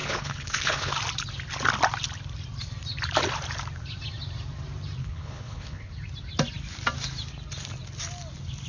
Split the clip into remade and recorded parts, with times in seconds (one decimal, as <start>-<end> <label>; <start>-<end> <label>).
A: 0.0-0.9 remade; 0.9-5.0 recorded; 5.0-5.9 remade; 5.9-8.7 recorded